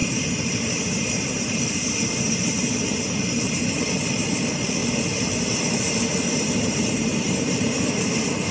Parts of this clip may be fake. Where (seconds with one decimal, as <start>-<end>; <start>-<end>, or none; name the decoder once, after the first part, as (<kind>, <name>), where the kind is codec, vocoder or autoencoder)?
0.0-3.7 (vocoder, BigVGAN v2); 4.8-8.5